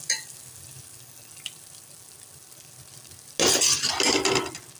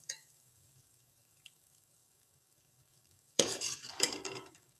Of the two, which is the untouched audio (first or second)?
first